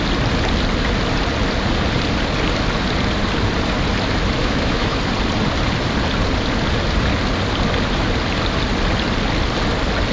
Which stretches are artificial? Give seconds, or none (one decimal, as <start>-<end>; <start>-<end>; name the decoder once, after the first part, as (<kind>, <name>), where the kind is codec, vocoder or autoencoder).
4.4-5.0 (autoencoder, DAC-VAE)